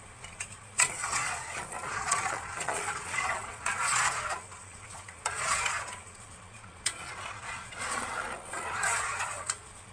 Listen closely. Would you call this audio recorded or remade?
remade